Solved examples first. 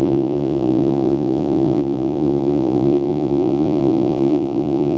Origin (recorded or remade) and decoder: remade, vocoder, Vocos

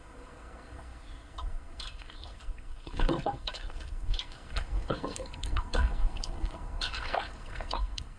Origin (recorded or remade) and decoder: remade, codec, SNAC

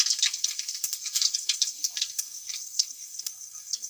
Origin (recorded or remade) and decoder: remade, codec, SNAC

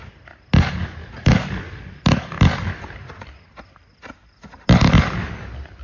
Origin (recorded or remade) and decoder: recorded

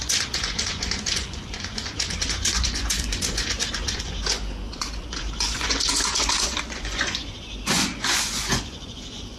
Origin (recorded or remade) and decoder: remade, vocoder, Vocos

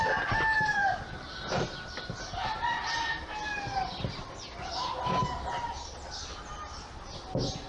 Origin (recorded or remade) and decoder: recorded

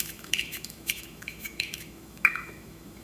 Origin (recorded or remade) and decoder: remade, autoencoder, DAC-VAE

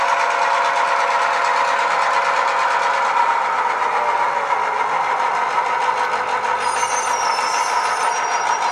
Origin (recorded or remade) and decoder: recorded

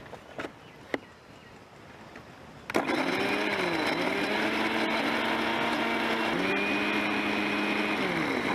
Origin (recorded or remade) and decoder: recorded